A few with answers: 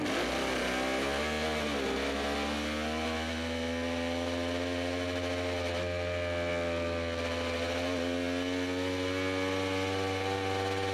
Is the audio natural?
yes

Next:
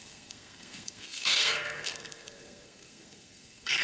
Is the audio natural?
no